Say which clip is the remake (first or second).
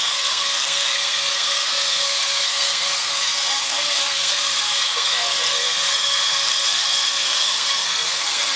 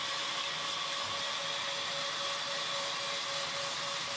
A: first